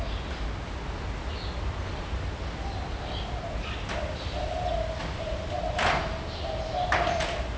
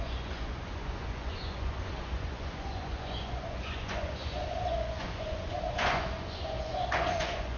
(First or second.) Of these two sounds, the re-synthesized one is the second